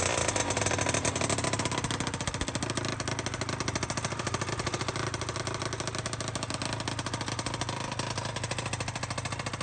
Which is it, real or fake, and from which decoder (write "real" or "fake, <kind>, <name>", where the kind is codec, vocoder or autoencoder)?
real